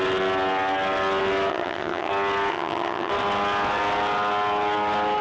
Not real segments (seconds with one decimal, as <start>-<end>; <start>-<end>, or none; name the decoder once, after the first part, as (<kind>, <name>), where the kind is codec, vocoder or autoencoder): 1.5-2.1 (vocoder, HiFi-GAN); 2.5-3.1